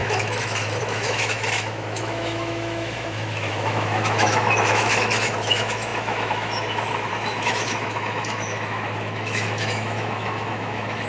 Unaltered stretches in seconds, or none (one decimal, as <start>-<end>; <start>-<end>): none

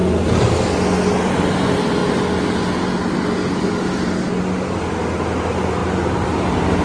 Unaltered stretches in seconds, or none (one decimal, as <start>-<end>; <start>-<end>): 0.0-5.8

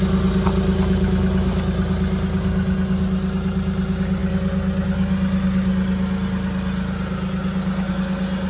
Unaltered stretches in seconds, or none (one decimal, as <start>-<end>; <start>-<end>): 0.0-8.5

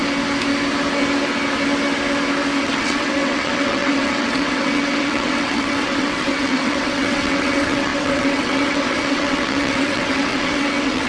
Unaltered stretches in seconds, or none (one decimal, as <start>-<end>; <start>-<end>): 0.0-2.6

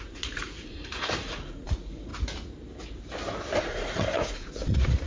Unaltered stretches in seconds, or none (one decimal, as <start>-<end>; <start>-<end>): 2.1-3.6